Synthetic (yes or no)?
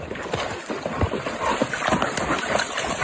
no